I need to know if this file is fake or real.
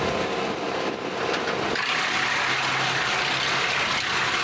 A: real